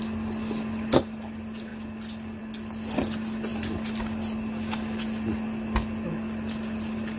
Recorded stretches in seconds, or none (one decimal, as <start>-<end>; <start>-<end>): 0.0-7.2